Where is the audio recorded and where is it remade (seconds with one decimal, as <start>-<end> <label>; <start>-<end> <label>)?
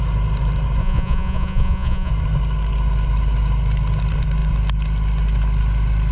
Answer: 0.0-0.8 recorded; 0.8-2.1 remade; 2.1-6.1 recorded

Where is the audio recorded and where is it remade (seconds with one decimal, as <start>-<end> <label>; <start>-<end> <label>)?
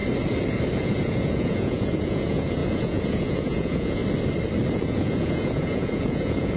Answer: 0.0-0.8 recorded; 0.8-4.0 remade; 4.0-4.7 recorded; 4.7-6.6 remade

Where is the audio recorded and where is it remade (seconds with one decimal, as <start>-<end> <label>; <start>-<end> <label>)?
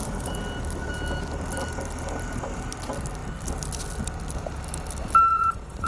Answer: 0.0-5.3 recorded; 5.3-5.9 remade